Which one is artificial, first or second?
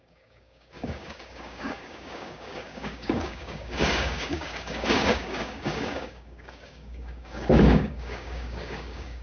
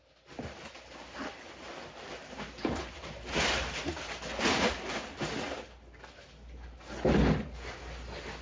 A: first